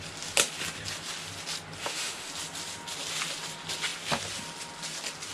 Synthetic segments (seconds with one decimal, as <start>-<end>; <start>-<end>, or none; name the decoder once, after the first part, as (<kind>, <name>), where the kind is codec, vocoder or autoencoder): 1.8-2.3 (autoencoder, DAC-VAE)